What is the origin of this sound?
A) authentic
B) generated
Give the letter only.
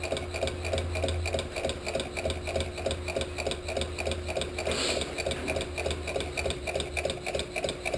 A